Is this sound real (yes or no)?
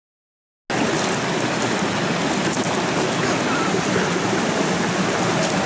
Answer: yes